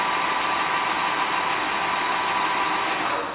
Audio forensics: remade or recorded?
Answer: recorded